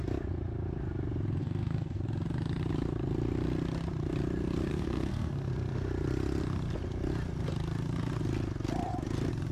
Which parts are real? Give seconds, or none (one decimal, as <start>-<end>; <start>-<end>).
0.0-1.4; 2.0-4.7; 5.5-9.5